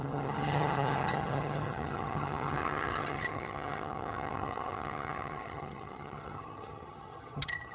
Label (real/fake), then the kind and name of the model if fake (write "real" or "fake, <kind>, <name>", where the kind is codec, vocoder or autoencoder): fake, vocoder, HiFi-GAN